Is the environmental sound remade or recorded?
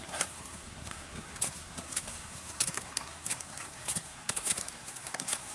remade